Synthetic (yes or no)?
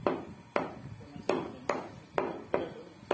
no